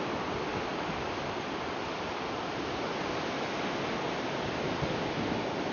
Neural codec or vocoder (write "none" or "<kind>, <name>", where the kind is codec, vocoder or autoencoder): none